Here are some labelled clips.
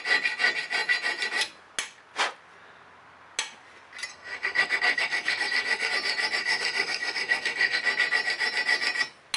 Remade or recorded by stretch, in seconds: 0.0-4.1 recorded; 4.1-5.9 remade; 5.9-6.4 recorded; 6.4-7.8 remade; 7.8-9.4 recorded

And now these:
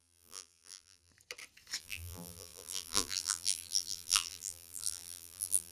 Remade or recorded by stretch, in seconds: 0.0-1.1 remade; 1.1-1.8 recorded; 1.8-5.7 remade

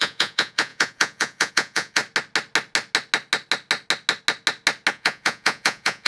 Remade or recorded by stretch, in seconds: 0.0-2.0 remade; 2.0-4.9 recorded; 4.9-6.1 remade

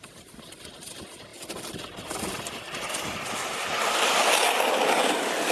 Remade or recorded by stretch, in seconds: 0.0-5.5 recorded

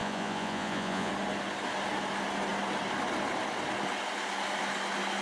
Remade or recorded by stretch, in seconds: 0.0-1.1 remade; 1.1-5.2 recorded

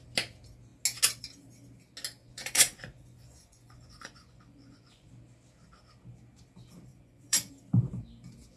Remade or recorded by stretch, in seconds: 0.0-2.2 recorded; 2.2-5.1 remade; 5.1-6.9 recorded; 6.9-7.5 remade; 7.5-8.6 recorded

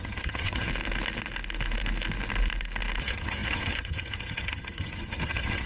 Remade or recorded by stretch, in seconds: 0.0-0.7 remade; 0.7-3.0 recorded; 3.0-5.7 remade